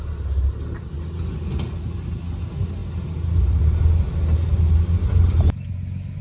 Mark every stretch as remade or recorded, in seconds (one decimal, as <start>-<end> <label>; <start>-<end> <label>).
0.0-6.2 recorded